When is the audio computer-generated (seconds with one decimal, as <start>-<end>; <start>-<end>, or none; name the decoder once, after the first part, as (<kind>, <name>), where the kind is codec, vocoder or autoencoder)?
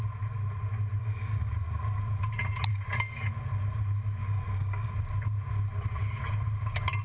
1.0-1.5 (codec, DAC); 2.7-3.3; 4.2-4.9